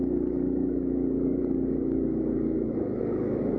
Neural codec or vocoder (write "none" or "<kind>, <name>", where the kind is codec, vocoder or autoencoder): codec, DAC